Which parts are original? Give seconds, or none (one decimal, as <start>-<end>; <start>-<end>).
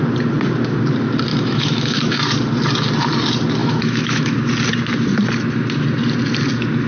0.0-1.3; 2.2-3.6; 4.4-6.9